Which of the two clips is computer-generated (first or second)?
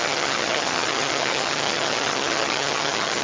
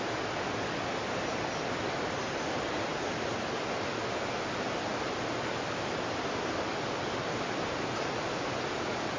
first